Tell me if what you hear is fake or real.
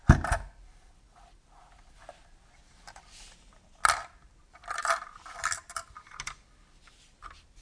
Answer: real